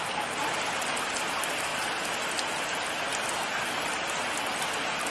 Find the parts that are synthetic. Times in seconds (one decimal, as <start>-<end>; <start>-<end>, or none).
1.7-2.3